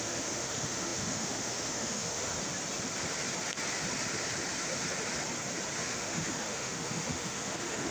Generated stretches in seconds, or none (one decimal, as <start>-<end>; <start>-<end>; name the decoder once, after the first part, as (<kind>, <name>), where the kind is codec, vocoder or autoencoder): 0.0-2.3 (autoencoder, DAC-VAE); 5.8-7.9